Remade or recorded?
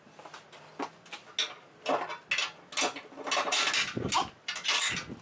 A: recorded